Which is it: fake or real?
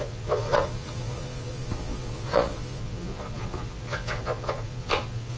fake